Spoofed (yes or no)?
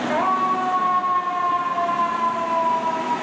no